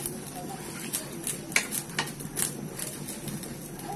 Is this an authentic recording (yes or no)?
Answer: yes